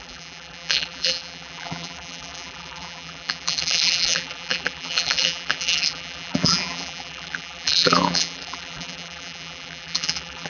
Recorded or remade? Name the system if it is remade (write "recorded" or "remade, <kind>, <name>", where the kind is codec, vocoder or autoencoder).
remade, vocoder, BigVGAN v2